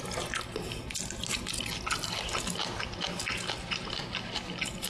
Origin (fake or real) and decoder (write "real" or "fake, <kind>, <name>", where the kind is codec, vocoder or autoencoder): real